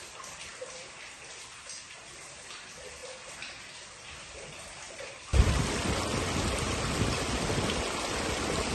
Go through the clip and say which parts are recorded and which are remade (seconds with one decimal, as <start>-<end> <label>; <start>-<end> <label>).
0.0-8.7 recorded